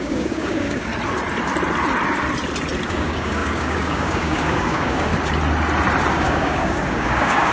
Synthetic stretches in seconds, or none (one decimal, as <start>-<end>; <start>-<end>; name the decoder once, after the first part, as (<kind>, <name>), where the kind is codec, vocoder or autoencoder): 0.0-0.9 (codec, DAC); 2.9-5.1; 6.1-7.5